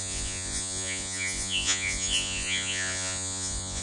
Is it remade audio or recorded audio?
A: remade